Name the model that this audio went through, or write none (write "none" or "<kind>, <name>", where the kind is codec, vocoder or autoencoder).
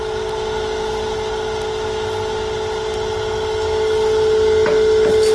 none